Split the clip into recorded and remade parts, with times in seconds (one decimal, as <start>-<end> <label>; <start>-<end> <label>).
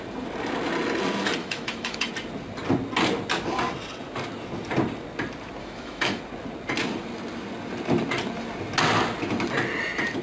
0.0-1.4 recorded; 1.4-2.1 remade; 2.1-5.6 recorded; 5.6-6.2 remade; 6.2-10.2 recorded